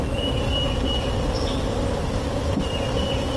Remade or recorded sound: recorded